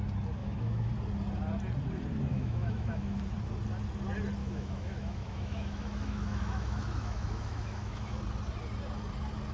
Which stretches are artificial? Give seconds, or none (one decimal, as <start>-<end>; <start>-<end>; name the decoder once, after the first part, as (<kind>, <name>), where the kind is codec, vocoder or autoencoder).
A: 0.4-0.9 (autoencoder, DAC-VAE); 2.3-3.2; 4.4-8.2